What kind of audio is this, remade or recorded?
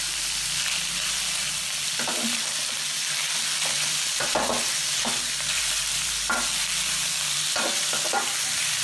remade